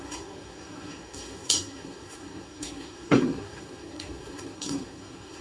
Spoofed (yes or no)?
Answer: yes